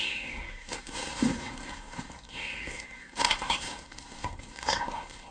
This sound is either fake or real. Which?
fake